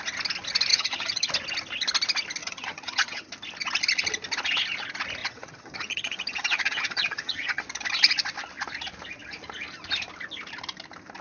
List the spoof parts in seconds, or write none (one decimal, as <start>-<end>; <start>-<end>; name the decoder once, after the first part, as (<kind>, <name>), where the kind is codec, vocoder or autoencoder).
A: 0.7-1.3 (vocoder, HiFi-GAN); 2.4-3.3; 5.2-7.6